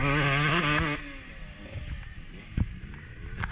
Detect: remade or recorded recorded